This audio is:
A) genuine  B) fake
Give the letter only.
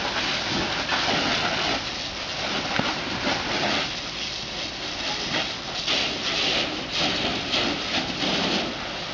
A